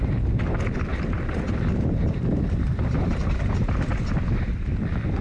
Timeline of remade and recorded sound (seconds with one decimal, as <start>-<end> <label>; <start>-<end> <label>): 0.0-0.9 recorded; 0.9-4.0 remade; 4.0-5.2 recorded